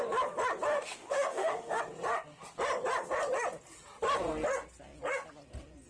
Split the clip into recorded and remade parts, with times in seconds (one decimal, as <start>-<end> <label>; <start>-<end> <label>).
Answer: 0.0-0.7 recorded; 0.7-1.8 remade; 1.8-5.9 recorded